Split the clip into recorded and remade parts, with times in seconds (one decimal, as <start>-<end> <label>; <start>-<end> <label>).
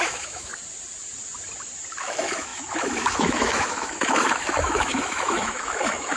0.0-0.5 remade; 0.5-2.0 recorded; 2.0-6.2 remade